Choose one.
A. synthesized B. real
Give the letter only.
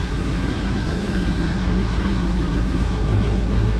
A